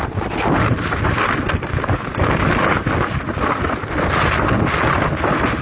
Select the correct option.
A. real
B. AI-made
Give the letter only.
A